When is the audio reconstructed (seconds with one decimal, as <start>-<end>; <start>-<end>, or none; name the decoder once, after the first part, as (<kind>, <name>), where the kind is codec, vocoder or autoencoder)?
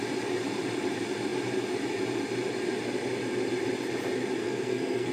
4.4-5.1 (codec, SNAC)